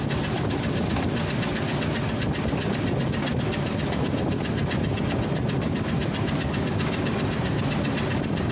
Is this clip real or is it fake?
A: real